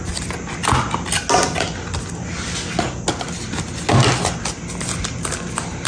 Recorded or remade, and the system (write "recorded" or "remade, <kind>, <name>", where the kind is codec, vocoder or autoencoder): recorded